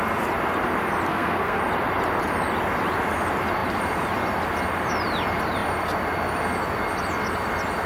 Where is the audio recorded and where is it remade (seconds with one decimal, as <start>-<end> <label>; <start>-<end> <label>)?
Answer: 0.0-1.1 recorded; 1.1-1.6 remade; 1.6-7.9 recorded